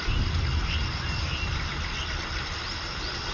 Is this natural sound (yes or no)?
yes